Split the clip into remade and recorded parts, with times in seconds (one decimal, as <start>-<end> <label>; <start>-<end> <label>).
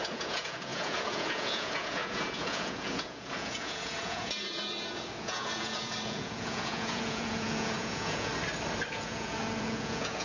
0.0-8.3 remade; 8.3-8.9 recorded; 8.9-10.2 remade